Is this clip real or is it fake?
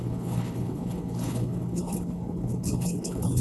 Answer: fake